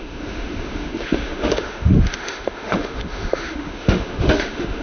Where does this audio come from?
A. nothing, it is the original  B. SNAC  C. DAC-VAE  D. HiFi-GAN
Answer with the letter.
C